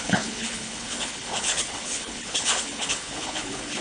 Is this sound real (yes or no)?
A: no